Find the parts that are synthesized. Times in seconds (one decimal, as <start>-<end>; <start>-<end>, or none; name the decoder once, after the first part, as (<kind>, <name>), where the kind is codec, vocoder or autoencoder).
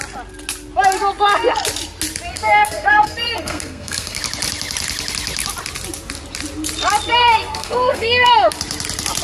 2.3-4.2 (codec, SNAC); 7.2-8.3